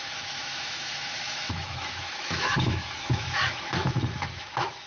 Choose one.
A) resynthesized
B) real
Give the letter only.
A